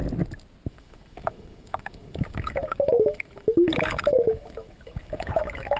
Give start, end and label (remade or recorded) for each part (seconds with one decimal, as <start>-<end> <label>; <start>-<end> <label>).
0.0-0.7 recorded; 0.7-5.8 remade